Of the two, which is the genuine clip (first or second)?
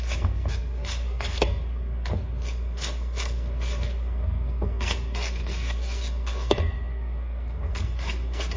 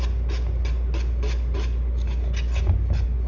second